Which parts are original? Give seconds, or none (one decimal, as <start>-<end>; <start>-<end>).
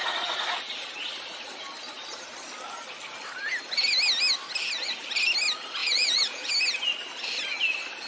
0.0-5.8; 6.5-8.1